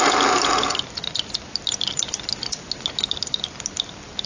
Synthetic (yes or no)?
no